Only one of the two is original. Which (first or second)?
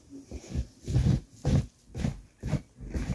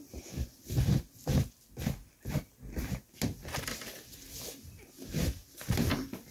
first